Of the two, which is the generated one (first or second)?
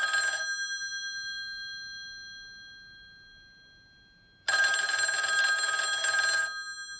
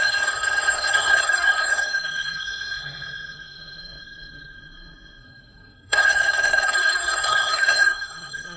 second